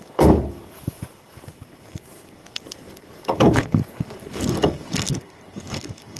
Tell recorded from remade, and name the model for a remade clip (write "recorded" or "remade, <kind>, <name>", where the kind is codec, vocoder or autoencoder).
remade, codec, DAC